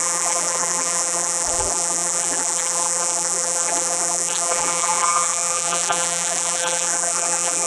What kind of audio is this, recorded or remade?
remade